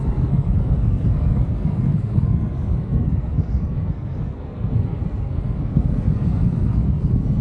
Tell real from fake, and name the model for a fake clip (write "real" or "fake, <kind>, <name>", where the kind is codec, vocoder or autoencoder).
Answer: fake, codec, SNAC